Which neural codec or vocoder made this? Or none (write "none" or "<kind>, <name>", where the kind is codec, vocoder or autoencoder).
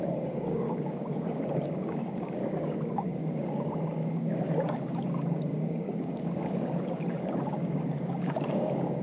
codec, DAC